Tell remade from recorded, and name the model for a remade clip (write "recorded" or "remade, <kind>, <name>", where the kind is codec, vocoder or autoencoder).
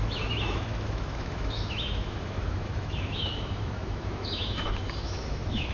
remade, autoencoder, DAC-VAE